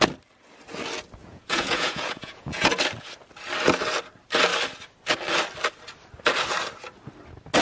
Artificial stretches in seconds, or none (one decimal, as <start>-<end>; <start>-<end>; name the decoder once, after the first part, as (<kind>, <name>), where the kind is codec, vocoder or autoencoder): 1.2-2.8 (vocoder, Vocos)